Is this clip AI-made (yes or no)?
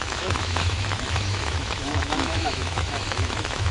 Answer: yes